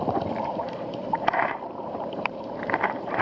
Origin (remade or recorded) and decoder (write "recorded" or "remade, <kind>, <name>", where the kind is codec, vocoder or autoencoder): remade, vocoder, BigVGAN v2